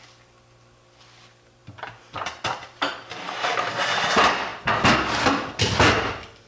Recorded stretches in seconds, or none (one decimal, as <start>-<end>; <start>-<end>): 0.0-6.5